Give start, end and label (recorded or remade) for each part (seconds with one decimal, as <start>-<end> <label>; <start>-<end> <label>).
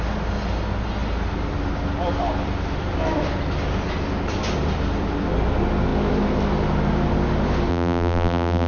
0.0-7.7 recorded; 7.7-8.7 remade